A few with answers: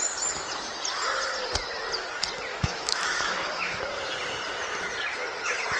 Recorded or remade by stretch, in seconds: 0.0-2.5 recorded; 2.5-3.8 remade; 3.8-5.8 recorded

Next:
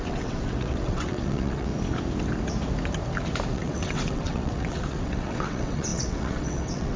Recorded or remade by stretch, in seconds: 0.0-1.7 remade; 1.7-3.5 recorded; 3.5-7.0 remade

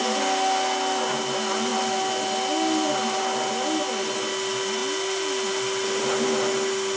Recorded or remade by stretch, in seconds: 0.0-7.0 recorded